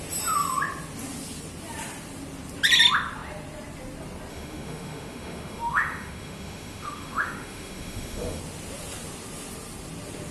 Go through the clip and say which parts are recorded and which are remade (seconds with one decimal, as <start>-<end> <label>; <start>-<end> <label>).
0.0-4.3 recorded; 4.3-8.4 remade; 8.4-10.3 recorded